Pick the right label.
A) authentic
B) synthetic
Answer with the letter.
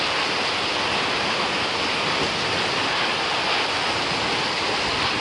A